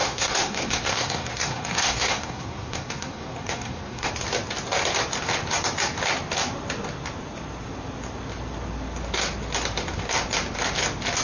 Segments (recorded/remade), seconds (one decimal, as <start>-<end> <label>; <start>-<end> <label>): 0.0-4.1 remade; 4.1-11.2 recorded